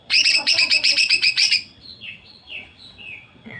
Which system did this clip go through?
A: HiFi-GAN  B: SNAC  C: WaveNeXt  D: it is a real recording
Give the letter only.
C